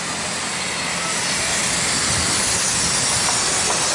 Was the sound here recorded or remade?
recorded